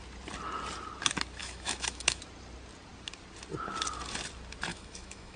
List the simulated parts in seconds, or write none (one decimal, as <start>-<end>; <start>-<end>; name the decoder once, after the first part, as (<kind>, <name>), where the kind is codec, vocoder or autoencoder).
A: 1.4-2.2 (autoencoder, DAC-VAE); 4.7-5.4